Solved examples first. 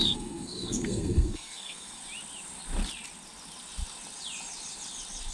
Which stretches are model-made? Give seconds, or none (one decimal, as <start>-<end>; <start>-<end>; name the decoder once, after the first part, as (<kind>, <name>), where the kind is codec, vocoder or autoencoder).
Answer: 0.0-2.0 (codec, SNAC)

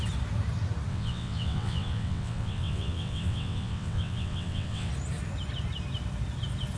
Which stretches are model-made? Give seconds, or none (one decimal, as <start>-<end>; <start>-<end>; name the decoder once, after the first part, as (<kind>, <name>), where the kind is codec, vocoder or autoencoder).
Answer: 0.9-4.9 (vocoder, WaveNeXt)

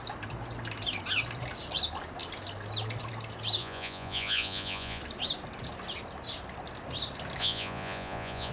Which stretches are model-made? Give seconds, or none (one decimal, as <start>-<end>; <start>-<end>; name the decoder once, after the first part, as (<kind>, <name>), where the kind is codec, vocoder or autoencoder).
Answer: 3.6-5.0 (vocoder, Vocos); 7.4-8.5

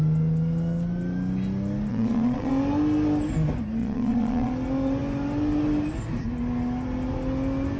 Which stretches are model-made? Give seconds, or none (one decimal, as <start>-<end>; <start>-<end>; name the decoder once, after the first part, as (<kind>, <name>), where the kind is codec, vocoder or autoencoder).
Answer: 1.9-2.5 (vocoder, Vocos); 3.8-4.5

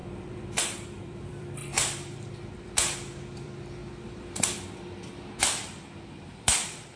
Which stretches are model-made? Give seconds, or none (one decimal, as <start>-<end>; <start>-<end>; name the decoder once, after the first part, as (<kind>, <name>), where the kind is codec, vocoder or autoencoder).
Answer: 0.0-7.0 (vocoder, BigVGAN v2)

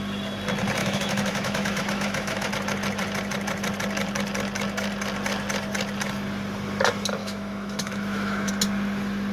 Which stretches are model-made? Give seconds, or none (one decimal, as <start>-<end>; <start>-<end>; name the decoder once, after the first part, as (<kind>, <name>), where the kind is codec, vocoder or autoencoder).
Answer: 0.8-2.5 (autoencoder, DAC-VAE); 7.2-8.5

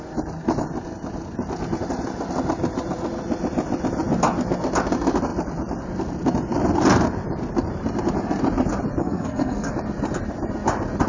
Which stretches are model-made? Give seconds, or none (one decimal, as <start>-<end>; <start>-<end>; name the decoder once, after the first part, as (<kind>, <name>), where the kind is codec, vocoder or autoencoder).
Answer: 9.0-9.7 (codec, SNAC)